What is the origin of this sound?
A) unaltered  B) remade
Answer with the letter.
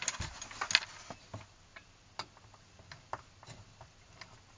A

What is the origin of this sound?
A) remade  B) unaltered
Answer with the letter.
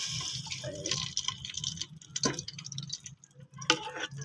B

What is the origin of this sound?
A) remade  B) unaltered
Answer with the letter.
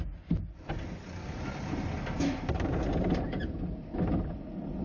B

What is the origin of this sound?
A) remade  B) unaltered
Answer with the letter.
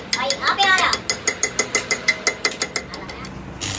B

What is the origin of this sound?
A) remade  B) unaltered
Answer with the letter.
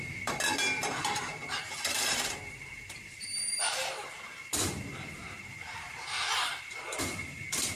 A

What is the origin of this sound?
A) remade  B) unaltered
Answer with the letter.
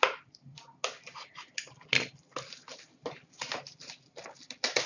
B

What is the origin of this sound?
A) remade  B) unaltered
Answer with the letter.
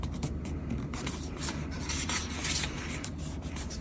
A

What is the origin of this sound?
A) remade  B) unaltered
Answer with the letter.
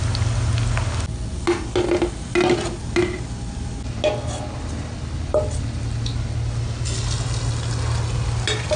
B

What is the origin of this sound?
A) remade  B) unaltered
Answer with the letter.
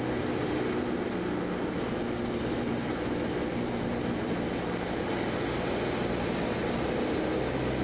B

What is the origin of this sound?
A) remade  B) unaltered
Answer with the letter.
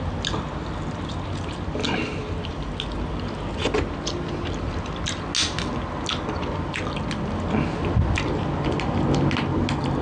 B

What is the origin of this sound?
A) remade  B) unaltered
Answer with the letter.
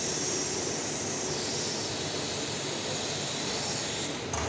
B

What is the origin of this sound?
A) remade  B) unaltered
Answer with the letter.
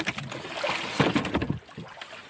B